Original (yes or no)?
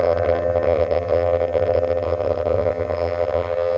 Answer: no